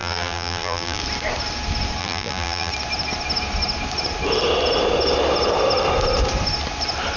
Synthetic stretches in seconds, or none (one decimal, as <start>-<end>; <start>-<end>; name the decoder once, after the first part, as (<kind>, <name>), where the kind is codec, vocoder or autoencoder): 0.0-1.0 (vocoder, BigVGAN v2); 2.0-2.7